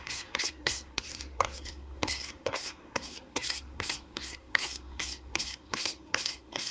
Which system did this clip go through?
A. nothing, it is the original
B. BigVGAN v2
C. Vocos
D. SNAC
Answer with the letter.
D